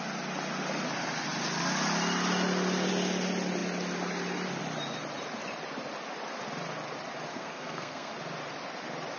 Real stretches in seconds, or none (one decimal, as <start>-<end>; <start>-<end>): 0.0-7.3; 8.1-9.2